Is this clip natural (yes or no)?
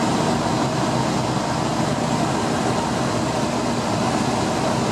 yes